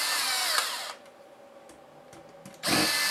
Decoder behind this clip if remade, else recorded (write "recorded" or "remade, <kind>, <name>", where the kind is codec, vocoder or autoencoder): recorded